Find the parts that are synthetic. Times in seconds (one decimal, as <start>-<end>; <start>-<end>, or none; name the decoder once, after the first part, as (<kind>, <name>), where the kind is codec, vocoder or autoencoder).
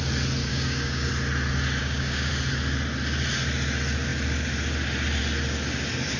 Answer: 0.5-1.1 (codec, DAC); 1.8-2.3